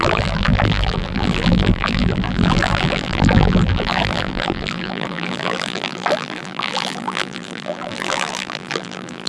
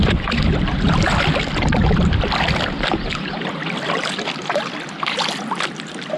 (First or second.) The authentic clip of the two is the second